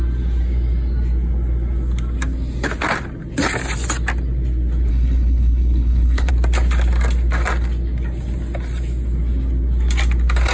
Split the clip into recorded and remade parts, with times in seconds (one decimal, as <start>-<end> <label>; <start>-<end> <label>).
0.0-4.9 recorded; 4.9-6.3 remade; 6.3-10.5 recorded